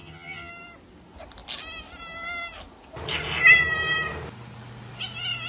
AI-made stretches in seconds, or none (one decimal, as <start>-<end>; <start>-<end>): 0.0-0.5